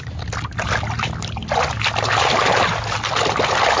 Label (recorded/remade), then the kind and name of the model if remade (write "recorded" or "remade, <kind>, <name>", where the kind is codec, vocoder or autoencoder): recorded